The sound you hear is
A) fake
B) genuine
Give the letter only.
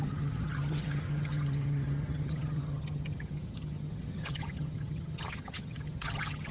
A